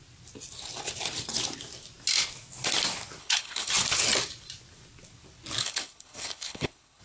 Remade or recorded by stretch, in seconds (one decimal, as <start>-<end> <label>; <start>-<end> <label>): 0.0-3.2 recorded; 3.2-3.7 remade; 3.7-5.6 recorded; 5.6-7.0 remade